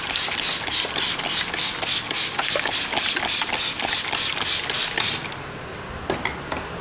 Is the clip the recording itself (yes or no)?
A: yes